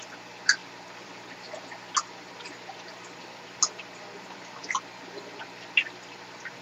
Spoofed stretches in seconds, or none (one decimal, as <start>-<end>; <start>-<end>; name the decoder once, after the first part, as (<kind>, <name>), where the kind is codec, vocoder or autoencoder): none